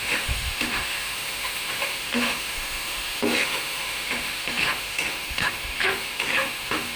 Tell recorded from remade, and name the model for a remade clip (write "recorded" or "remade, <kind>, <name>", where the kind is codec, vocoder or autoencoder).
remade, autoencoder, DAC-VAE